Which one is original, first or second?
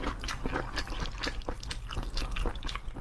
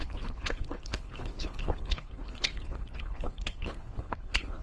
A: first